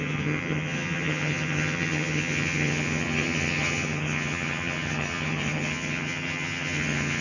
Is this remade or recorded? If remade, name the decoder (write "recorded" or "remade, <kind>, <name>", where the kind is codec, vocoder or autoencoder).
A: remade, vocoder, HiFi-GAN